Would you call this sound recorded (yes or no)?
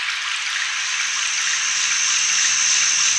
yes